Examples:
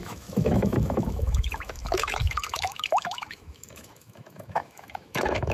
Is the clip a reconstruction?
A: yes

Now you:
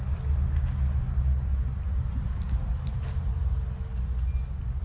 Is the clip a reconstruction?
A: no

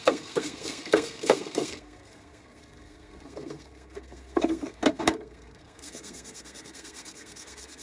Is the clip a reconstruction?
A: yes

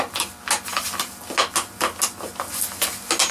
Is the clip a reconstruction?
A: no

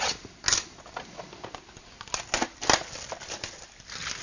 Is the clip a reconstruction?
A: no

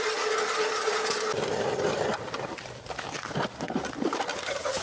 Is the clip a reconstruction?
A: no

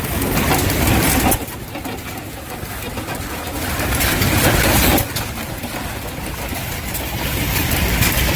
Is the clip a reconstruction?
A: no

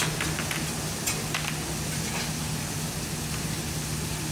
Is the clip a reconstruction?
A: no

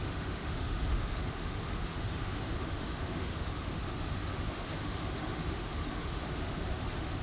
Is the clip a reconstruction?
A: yes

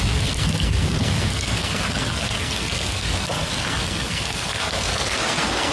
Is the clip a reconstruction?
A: yes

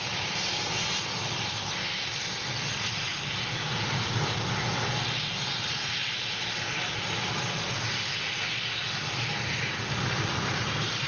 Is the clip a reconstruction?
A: no